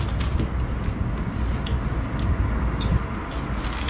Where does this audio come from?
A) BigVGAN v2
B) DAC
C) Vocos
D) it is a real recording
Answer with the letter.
D